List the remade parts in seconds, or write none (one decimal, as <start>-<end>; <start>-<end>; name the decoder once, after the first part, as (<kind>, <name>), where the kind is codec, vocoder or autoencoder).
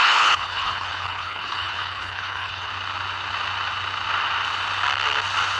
0.0-2.7 (codec, HILCodec)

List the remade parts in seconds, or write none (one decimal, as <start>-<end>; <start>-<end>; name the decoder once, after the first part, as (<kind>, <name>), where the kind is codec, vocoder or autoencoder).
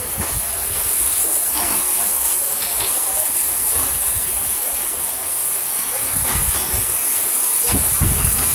0.0-8.5 (codec, SNAC)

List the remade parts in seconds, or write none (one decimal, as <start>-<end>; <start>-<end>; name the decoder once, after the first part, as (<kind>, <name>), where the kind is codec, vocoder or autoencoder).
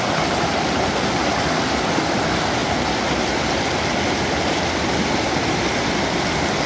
none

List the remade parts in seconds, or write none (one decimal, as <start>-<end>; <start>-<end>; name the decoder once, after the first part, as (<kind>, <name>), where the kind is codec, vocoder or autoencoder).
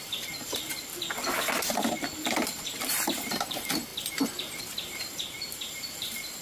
0.0-0.9 (vocoder, BigVGAN v2); 1.4-3.9; 4.6-6.4